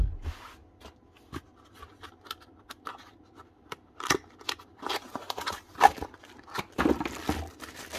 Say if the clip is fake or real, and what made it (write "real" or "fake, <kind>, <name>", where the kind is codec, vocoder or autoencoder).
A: real